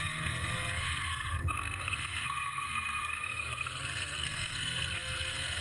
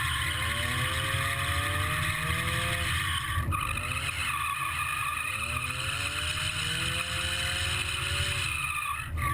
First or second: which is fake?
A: first